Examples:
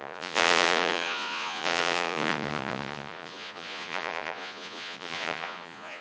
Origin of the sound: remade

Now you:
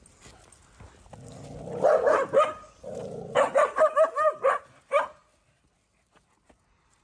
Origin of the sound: recorded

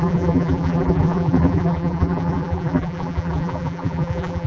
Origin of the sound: remade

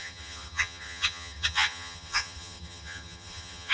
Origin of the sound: remade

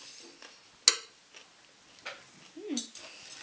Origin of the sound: recorded